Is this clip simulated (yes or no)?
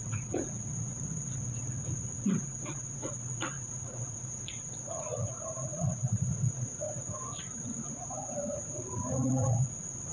yes